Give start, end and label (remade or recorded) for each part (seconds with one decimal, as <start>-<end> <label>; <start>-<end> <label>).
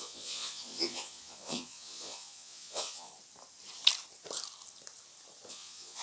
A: 0.0-3.1 remade; 3.1-5.5 recorded; 5.5-6.0 remade